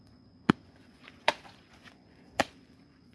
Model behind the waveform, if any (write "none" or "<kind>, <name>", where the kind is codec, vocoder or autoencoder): vocoder, Vocos